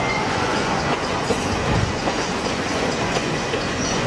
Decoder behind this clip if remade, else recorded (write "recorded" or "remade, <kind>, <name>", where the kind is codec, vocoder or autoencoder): remade, vocoder, Vocos